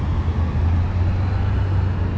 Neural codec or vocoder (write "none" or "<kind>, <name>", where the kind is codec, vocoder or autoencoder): none